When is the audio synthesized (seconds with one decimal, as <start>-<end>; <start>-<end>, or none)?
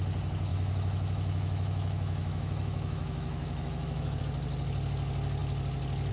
0.5-4.2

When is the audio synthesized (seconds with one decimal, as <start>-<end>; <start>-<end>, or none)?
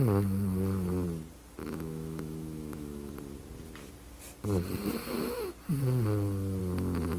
1.6-3.1